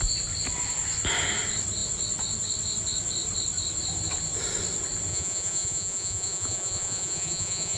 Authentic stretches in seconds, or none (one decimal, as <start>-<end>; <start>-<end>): 0.0-5.1